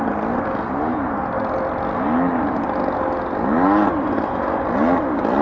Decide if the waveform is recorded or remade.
recorded